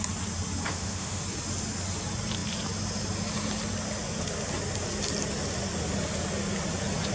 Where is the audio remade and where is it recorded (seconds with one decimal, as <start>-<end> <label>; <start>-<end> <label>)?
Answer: 0.0-0.7 recorded; 0.7-1.2 remade; 1.2-7.1 recorded